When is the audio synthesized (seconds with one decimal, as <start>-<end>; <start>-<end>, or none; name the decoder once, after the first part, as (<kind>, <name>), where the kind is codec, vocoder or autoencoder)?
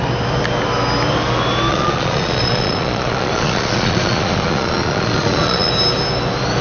1.7-5.7 (vocoder, Vocos)